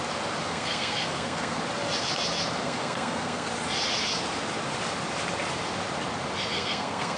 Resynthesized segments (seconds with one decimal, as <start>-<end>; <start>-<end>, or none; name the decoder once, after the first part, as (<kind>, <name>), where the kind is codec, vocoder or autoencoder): 0.4-1.6 (codec, SNAC); 2.6-3.5; 6.5-7.2